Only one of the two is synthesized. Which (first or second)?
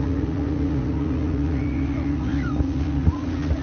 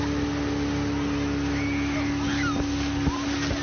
first